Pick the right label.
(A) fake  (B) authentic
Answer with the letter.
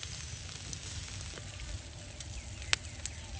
B